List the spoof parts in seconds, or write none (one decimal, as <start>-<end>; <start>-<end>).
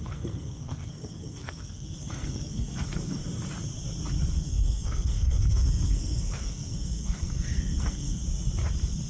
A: 0.0-3.2; 4.4-8.2